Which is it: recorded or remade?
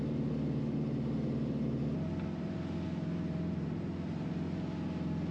recorded